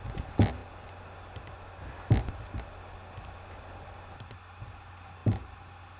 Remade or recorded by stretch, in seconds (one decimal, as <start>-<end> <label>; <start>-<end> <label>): 0.0-6.0 recorded